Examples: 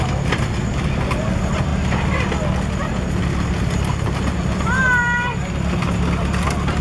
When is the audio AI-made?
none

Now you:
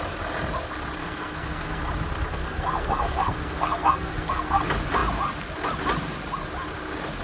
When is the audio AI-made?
1.0-1.8 (codec, SNAC); 2.3-4.6